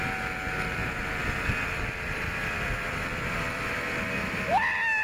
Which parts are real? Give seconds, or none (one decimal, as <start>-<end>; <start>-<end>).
0.0-0.8; 3.8-5.0